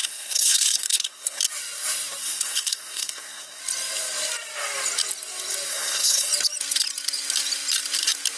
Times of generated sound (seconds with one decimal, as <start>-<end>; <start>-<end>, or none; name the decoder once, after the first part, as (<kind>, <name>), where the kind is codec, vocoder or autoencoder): 0.0-1.4 (codec, SNAC); 2.2-3.6; 5.7-6.3